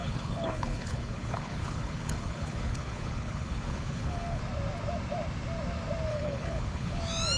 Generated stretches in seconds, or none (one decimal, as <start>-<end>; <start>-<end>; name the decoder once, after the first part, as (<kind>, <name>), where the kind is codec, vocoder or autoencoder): 0.0-4.4 (codec, HILCodec); 6.1-7.0